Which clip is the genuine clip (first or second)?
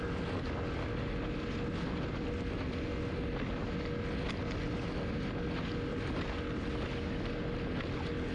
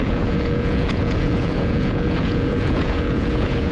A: first